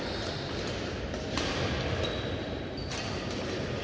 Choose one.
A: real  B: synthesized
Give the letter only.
A